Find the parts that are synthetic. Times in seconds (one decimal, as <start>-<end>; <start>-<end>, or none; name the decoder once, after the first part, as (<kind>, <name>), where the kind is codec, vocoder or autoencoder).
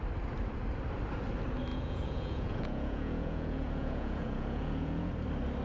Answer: 1.7-5.1 (vocoder, Vocos)